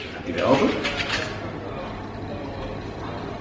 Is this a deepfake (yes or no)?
no